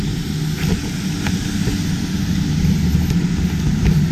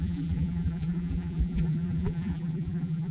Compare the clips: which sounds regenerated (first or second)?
second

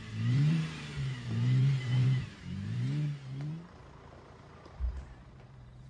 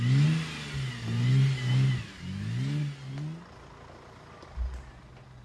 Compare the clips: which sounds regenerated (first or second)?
first